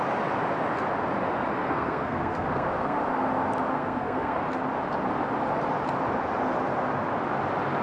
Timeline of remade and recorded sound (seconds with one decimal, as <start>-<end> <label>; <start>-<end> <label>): 0.0-1.6 recorded; 1.6-3.0 remade; 3.0-3.7 recorded; 3.7-4.4 remade; 4.4-7.8 recorded